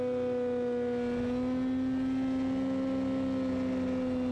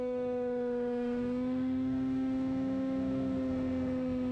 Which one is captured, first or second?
first